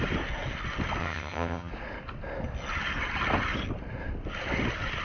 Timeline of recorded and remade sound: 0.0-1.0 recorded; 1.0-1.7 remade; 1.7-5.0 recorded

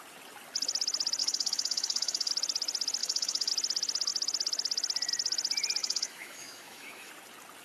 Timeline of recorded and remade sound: 0.0-1.2 recorded; 1.2-2.3 remade; 2.3-3.0 recorded; 3.0-3.5 remade; 3.5-5.8 recorded; 5.8-7.1 remade; 7.1-7.6 recorded